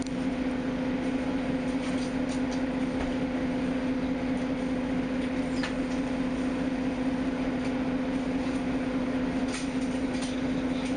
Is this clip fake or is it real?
real